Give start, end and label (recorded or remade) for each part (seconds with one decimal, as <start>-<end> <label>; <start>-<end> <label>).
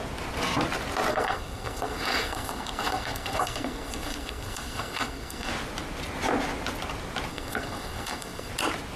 0.0-1.1 recorded; 1.1-5.5 remade; 5.5-7.3 recorded; 7.3-8.5 remade; 8.5-9.0 recorded